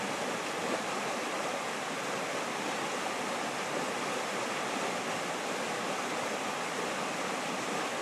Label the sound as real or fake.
real